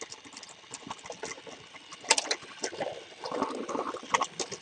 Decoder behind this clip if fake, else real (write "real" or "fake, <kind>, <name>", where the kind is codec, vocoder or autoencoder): real